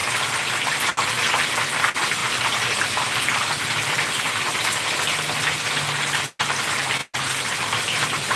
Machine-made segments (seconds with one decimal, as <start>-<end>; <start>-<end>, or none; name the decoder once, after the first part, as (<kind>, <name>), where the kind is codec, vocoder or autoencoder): none